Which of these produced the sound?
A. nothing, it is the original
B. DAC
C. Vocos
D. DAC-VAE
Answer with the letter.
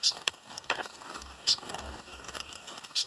B